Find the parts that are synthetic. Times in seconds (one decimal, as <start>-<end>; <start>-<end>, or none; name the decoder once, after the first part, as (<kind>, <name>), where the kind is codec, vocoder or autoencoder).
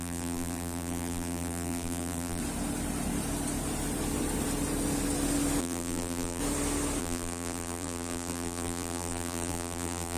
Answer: 0.0-2.4 (vocoder, BigVGAN v2); 5.6-6.4; 7.0-10.2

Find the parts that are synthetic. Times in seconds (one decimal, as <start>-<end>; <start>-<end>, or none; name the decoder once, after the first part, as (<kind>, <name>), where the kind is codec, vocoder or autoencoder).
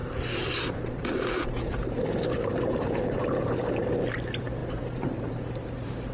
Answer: 0.0-3.7 (vocoder, BigVGAN v2); 4.6-6.1